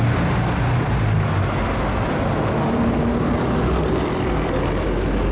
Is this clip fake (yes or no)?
no